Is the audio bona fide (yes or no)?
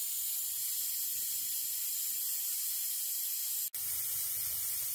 yes